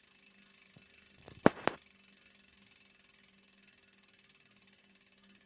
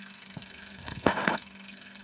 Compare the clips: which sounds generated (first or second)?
second